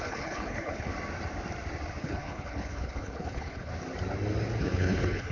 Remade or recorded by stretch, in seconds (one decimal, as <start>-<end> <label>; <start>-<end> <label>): 0.0-0.9 remade; 0.9-2.0 recorded; 2.0-3.7 remade; 3.7-4.6 recorded; 4.6-5.3 remade